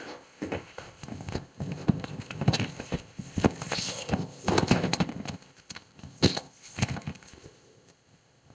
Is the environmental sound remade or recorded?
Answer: remade